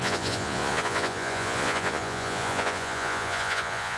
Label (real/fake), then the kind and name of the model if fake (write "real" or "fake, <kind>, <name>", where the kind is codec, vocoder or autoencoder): fake, vocoder, Vocos